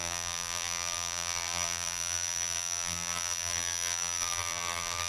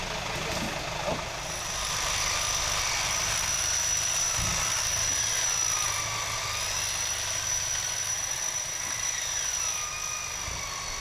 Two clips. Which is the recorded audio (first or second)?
second